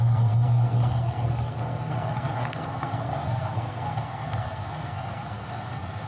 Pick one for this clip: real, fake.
fake